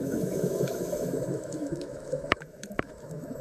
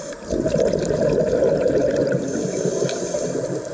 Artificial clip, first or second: first